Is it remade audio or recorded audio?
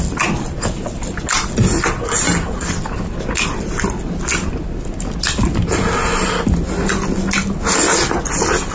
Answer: recorded